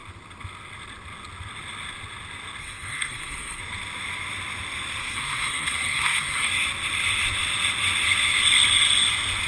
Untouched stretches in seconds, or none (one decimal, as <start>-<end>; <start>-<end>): 0.0-2.6; 3.6-5.0; 6.5-9.5